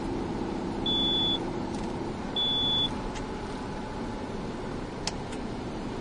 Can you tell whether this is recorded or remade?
recorded